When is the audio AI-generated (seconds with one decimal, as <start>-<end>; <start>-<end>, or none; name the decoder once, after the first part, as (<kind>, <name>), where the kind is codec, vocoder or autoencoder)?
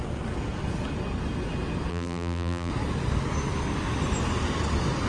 1.9-2.7 (vocoder, BigVGAN v2)